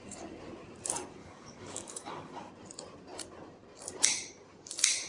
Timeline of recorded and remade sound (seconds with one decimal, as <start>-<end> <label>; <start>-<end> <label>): 0.0-1.2 recorded; 1.2-2.5 remade; 2.5-5.1 recorded